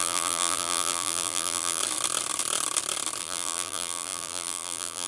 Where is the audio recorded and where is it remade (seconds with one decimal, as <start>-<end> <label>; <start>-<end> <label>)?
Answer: 0.0-1.8 remade; 1.8-3.2 recorded; 3.2-5.1 remade